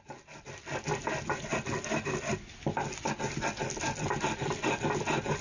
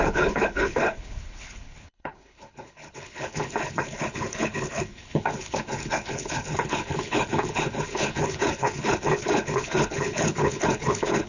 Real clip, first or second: first